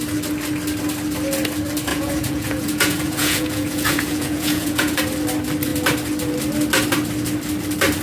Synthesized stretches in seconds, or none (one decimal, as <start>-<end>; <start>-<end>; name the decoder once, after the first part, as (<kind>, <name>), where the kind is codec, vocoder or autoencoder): 1.9-5.0 (vocoder, Vocos)